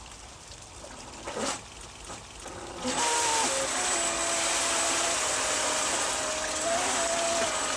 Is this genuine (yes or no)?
yes